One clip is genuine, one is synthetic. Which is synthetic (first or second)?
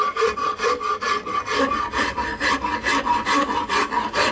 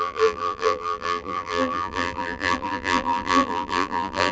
second